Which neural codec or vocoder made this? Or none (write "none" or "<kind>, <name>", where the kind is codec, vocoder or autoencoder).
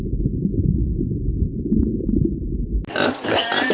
none